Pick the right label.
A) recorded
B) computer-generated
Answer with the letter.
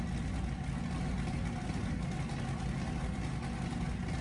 A